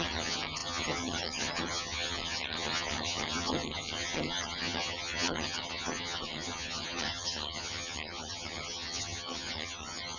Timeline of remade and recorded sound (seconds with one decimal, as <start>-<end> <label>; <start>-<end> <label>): 0.0-10.2 remade